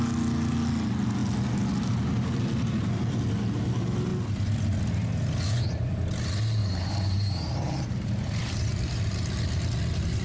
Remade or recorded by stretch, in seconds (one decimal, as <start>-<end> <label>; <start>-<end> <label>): 0.0-6.6 recorded; 6.6-8.6 remade; 8.6-10.2 recorded